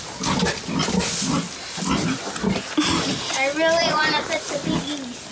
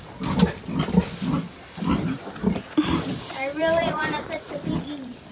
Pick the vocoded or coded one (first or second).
second